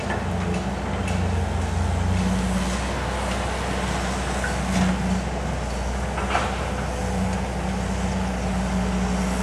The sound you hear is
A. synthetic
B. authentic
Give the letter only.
B